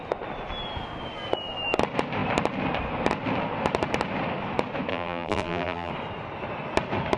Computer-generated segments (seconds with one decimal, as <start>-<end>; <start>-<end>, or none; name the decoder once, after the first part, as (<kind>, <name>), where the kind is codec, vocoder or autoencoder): 4.9-5.9 (vocoder, BigVGAN v2)